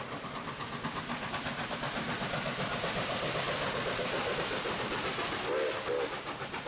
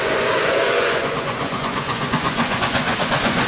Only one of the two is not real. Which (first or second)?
second